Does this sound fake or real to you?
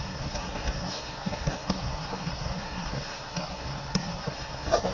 fake